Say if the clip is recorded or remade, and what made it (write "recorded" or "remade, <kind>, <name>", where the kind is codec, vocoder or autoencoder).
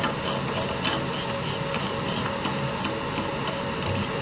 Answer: recorded